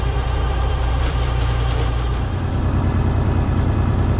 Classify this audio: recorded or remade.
remade